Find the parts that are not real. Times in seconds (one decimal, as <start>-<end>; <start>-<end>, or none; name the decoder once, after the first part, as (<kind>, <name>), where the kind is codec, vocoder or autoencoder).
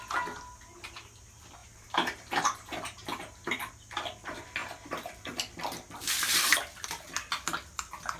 1.6-3.7 (vocoder, BigVGAN v2); 4.6-5.3